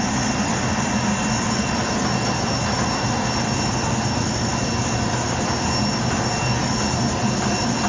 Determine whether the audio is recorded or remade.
recorded